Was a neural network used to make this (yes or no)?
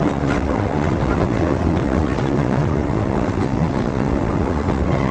yes